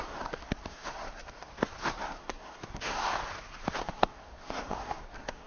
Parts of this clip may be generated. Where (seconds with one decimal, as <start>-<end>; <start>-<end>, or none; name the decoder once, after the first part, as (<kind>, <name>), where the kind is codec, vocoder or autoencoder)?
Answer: 0.0-1.5 (codec, SNAC); 2.0-3.0; 3.8-5.5